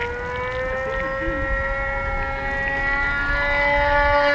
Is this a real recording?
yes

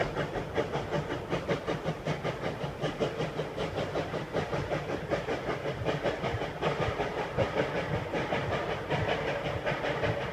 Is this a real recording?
yes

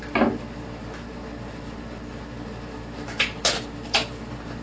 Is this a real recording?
yes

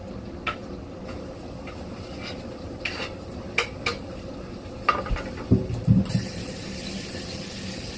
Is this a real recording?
yes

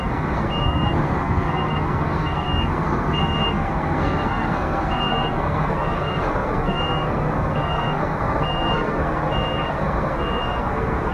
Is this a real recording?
no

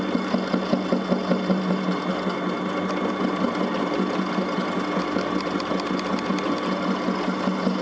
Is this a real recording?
yes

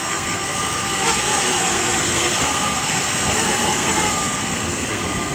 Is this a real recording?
no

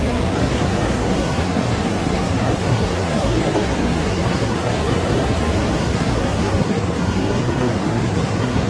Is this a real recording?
no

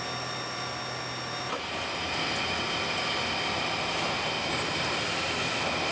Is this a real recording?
yes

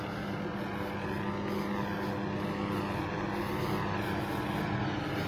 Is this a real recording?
yes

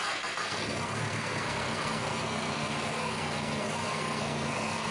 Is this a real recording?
no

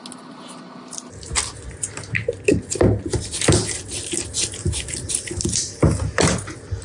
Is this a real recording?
yes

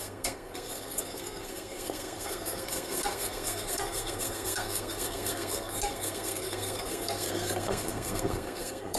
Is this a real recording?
no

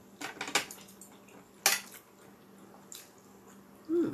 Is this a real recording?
yes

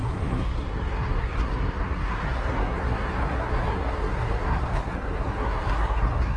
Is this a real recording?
no